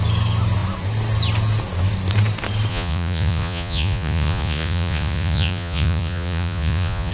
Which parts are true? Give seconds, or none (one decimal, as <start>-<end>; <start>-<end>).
0.0-2.7